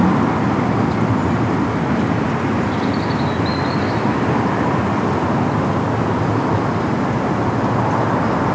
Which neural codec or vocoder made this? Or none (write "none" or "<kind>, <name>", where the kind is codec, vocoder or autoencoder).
none